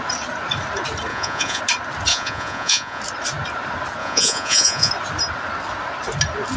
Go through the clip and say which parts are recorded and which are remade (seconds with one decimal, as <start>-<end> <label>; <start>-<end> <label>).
0.0-1.1 recorded; 1.1-1.6 remade; 1.6-2.1 recorded; 2.1-3.0 remade; 3.0-4.0 recorded; 4.0-4.9 remade; 4.9-6.6 recorded